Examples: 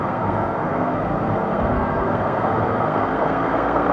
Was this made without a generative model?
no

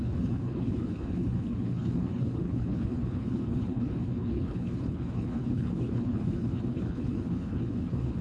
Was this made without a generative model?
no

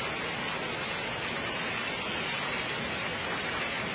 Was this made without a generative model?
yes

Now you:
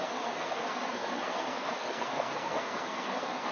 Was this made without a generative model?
no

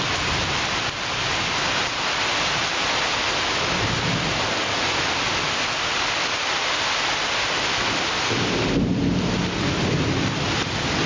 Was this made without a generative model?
yes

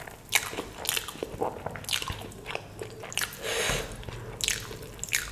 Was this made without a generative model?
yes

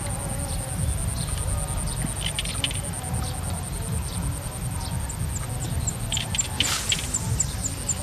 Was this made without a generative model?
yes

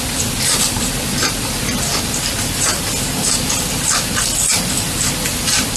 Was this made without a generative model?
no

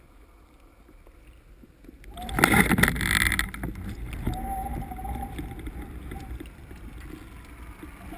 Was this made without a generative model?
yes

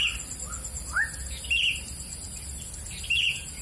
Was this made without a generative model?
yes